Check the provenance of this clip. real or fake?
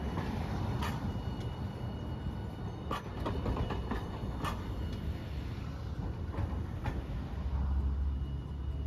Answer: real